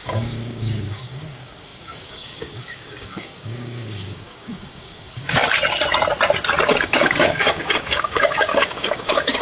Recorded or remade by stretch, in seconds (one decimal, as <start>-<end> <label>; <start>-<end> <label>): 0.0-5.4 remade; 5.4-6.7 recorded; 6.7-9.4 remade